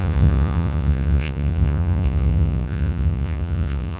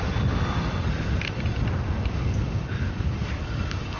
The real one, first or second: second